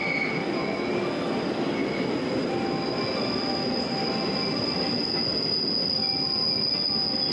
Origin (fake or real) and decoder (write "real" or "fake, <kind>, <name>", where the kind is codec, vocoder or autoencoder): real